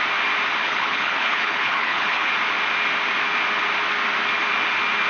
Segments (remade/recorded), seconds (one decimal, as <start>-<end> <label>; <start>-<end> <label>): 0.0-0.6 recorded; 0.6-2.3 remade; 2.3-5.1 recorded

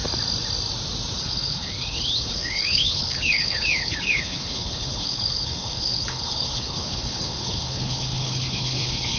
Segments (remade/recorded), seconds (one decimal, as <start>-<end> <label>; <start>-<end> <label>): 0.0-1.2 recorded; 1.2-9.2 remade

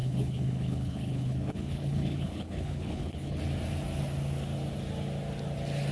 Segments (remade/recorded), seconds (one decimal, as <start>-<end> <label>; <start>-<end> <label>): 0.0-3.4 remade; 3.4-5.9 recorded

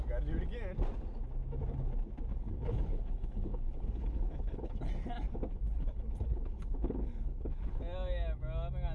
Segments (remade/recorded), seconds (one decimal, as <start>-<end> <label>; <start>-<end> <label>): 0.0-2.3 recorded; 2.3-4.9 remade; 4.9-5.5 recorded; 5.5-7.8 remade; 7.8-8.9 recorded

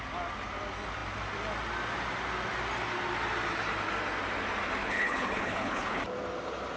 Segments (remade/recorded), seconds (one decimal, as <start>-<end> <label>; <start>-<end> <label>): 0.0-4.8 recorded; 4.8-6.0 remade; 6.0-6.8 recorded

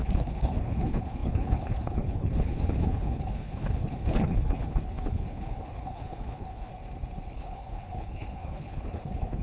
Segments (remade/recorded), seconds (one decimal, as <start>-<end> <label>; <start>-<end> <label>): 0.0-6.7 remade; 6.7-7.3 recorded; 7.3-9.4 remade

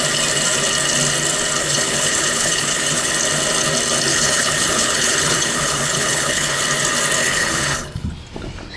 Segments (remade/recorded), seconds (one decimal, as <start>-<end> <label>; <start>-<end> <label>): 0.0-1.6 recorded; 1.6-3.1 remade; 3.1-4.1 recorded; 4.1-6.6 remade; 6.6-7.2 recorded; 7.2-8.1 remade; 8.1-8.8 recorded